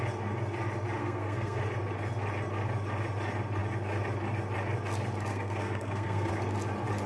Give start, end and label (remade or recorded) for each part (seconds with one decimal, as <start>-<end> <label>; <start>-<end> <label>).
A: 0.0-1.0 recorded; 1.0-1.6 remade; 1.6-5.3 recorded; 5.3-6.3 remade; 6.3-7.1 recorded